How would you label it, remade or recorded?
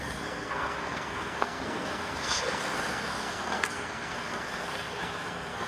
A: remade